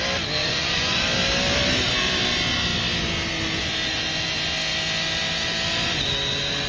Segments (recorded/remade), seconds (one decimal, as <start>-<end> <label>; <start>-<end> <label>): 0.0-0.4 recorded; 0.4-1.0 remade; 1.0-6.7 recorded